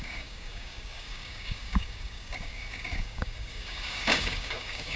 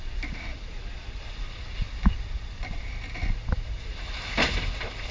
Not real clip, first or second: first